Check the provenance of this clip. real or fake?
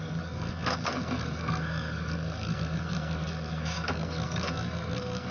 fake